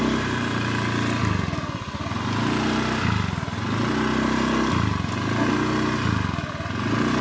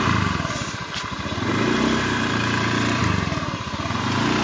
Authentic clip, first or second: first